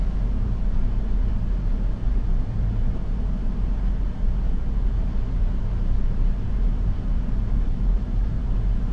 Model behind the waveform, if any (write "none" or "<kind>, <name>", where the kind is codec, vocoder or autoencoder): vocoder, BigVGAN v2